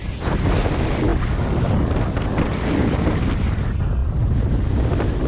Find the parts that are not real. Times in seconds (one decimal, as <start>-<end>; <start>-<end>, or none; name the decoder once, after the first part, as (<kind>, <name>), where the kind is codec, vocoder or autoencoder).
none